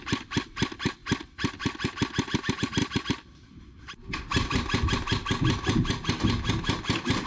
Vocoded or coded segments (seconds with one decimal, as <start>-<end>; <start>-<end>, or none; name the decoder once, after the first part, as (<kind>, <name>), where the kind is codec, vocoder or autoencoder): none